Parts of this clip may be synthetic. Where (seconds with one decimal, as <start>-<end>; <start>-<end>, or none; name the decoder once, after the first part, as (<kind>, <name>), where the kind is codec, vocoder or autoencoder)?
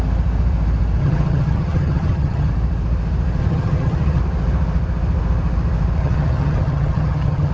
1.0-2.5 (vocoder, HiFi-GAN); 3.4-4.2; 6.0-7.5